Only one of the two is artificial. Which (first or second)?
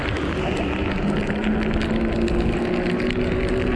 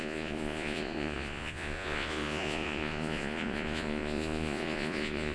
second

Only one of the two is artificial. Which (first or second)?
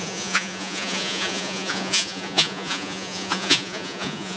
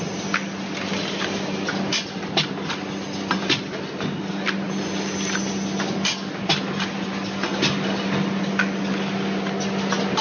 first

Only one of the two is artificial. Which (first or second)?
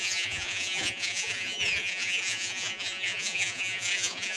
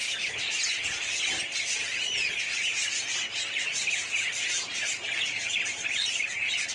first